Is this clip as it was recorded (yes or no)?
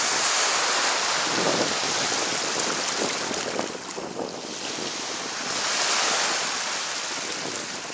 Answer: yes